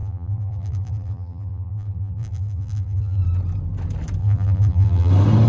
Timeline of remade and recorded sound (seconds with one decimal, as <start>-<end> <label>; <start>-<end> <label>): 0.0-3.2 remade; 3.2-4.2 recorded; 4.2-5.1 remade; 5.1-5.5 recorded